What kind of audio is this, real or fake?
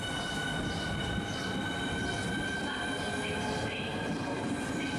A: real